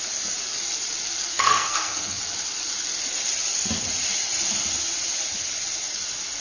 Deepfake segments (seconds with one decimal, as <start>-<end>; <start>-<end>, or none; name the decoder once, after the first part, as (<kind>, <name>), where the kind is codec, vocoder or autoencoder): 1.3-2.2 (codec, SNAC)